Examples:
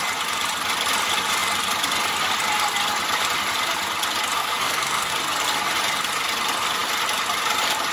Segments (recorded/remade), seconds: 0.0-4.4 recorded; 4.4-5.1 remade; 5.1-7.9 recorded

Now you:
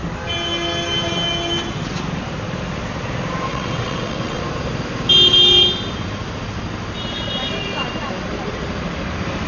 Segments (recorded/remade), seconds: 0.0-3.5 recorded; 3.5-4.4 remade; 4.4-9.5 recorded

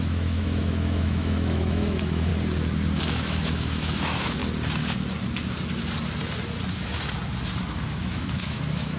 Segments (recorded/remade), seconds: 0.0-2.3 remade; 2.3-3.1 recorded; 3.1-4.4 remade; 4.4-7.9 recorded; 7.9-9.0 remade

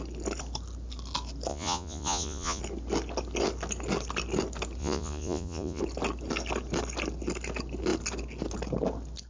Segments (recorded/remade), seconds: 0.0-1.5 recorded; 1.5-2.6 remade; 2.6-4.8 recorded; 4.8-5.8 remade; 5.8-9.3 recorded

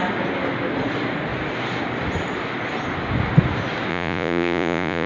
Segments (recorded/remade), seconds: 0.0-3.9 recorded; 3.9-5.1 remade